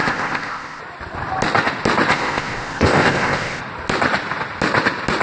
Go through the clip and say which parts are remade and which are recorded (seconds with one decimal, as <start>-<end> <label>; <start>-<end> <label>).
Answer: 0.0-0.8 remade; 0.8-2.1 recorded; 2.1-3.6 remade; 3.6-5.2 recorded